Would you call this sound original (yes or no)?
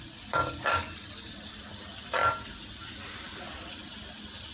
yes